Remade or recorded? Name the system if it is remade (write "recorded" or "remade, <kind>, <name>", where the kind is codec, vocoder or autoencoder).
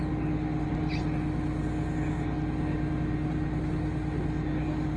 recorded